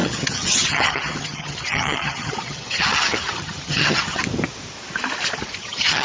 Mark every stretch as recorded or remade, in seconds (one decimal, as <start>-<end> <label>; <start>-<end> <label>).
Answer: 0.0-4.2 remade; 4.2-5.6 recorded; 5.6-6.0 remade